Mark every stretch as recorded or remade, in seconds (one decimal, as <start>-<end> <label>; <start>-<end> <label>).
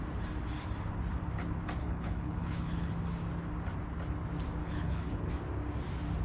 0.0-1.8 recorded; 1.8-2.9 remade; 2.9-4.6 recorded; 4.6-5.3 remade; 5.3-6.2 recorded